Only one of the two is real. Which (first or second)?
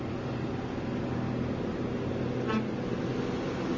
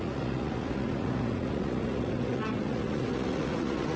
first